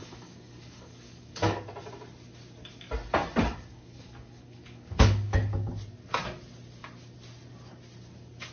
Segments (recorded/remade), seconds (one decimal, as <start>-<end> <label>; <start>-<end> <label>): 0.0-1.6 remade; 1.6-3.7 recorded; 3.7-5.7 remade; 5.7-8.5 recorded